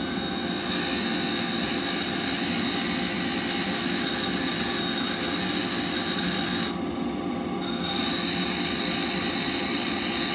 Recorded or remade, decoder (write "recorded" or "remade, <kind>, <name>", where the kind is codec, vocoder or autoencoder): recorded